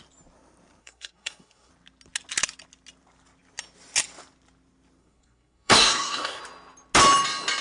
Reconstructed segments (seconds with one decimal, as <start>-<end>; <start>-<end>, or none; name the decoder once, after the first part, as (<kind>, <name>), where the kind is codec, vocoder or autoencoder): 0.8-1.7 (codec, SNAC); 5.0-6.4